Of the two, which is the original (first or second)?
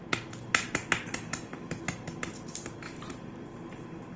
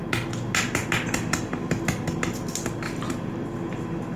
second